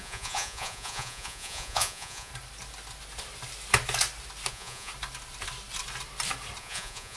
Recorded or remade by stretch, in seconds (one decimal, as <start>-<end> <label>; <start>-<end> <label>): 0.0-2.3 remade; 2.3-4.5 recorded; 4.5-4.9 remade; 4.9-6.6 recorded; 6.6-7.2 remade